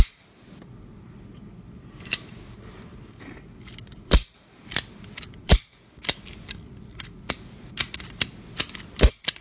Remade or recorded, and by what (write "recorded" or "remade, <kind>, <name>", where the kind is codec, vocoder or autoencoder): recorded